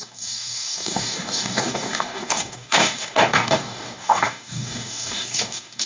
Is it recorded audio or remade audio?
remade